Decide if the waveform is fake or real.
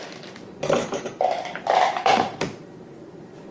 fake